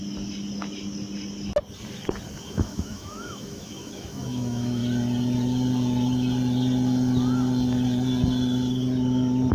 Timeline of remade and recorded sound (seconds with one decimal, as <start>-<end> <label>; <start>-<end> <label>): 0.0-2.4 recorded; 2.4-4.8 remade; 4.8-9.5 recorded